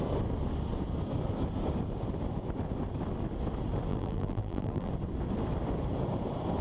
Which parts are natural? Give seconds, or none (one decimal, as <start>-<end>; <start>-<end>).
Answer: 0.0-3.9; 4.9-6.6